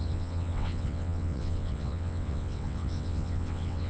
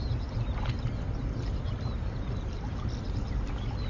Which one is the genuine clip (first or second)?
second